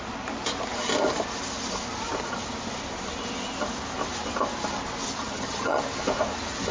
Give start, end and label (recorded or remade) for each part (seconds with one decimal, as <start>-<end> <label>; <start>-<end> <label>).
0.0-5.2 recorded; 5.2-5.8 remade; 5.8-6.7 recorded